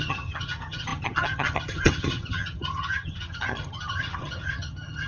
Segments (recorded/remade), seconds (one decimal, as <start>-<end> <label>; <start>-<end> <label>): 0.0-5.1 remade